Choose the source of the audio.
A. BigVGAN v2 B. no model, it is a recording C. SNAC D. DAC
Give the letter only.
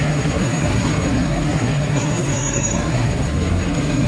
C